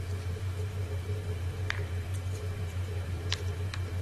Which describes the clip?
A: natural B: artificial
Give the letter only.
B